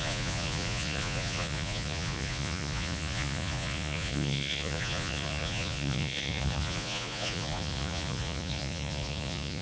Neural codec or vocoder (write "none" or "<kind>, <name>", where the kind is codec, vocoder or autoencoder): vocoder, Vocos